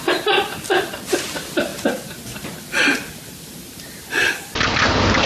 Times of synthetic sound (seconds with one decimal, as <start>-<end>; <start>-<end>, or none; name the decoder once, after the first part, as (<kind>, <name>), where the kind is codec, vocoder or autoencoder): none